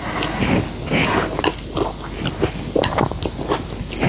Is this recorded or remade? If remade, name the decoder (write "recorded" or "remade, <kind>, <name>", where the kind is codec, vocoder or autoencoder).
recorded